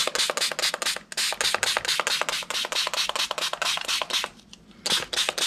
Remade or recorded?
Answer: recorded